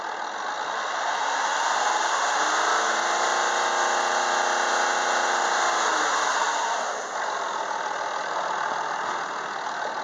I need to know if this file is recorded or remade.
recorded